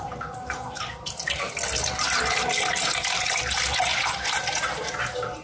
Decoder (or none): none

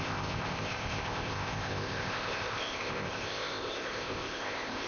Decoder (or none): codec, ZipCodec